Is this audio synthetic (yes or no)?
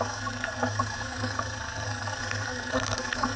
yes